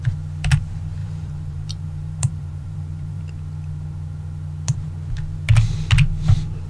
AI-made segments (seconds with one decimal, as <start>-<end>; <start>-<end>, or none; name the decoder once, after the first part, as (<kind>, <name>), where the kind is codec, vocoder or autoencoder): 1.0-3.2 (vocoder, BigVGAN v2)